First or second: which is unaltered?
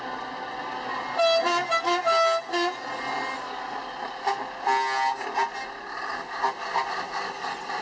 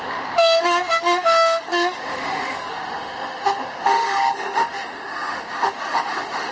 first